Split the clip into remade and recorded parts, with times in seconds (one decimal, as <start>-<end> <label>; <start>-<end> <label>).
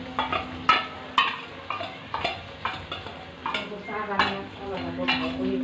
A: 0.0-5.6 recorded